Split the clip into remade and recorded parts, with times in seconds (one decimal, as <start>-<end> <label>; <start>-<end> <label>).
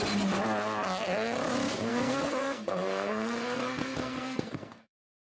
0.0-1.9 recorded; 1.9-5.2 remade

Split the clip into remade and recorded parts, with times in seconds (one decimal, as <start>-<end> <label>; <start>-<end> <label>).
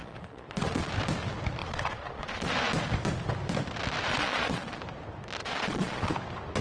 0.0-0.9 remade; 0.9-1.6 recorded; 1.6-2.5 remade; 2.5-4.1 recorded; 4.1-4.8 remade; 4.8-5.4 recorded; 5.4-6.1 remade; 6.1-6.6 recorded